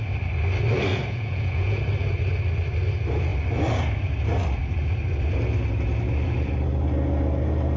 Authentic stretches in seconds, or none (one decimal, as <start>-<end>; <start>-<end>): 0.0-0.9; 1.8-7.8